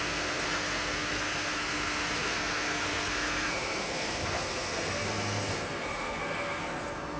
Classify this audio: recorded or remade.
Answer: remade